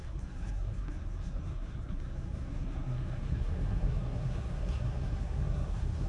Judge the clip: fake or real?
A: fake